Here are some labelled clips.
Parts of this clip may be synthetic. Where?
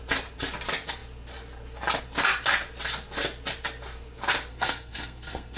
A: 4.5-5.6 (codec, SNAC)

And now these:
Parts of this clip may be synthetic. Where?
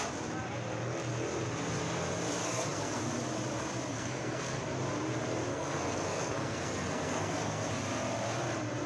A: 2.4-3.0 (codec, SNAC); 3.9-4.6; 5.5-7.7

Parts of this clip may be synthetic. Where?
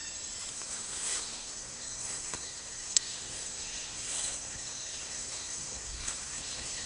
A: 0.5-6.9 (codec, SNAC)